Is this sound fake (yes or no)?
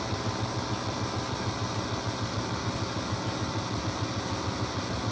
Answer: no